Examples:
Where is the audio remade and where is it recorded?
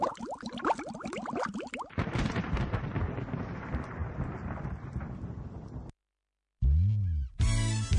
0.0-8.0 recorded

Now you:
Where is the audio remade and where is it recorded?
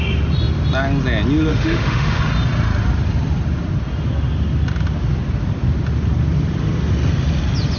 0.0-1.5 recorded; 1.5-2.2 remade; 2.2-7.8 recorded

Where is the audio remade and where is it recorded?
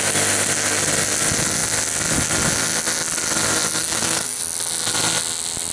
0.0-3.8 recorded; 3.8-4.4 remade; 4.4-5.7 recorded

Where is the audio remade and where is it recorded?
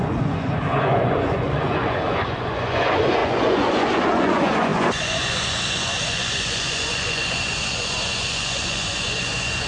0.0-9.7 remade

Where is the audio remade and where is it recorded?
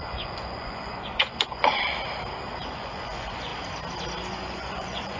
0.0-2.0 remade; 2.0-2.6 recorded; 2.6-3.5 remade; 3.5-4.3 recorded; 4.3-5.2 remade